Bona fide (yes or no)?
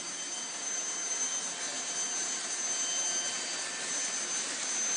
yes